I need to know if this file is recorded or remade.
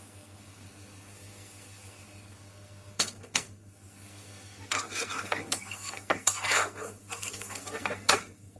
remade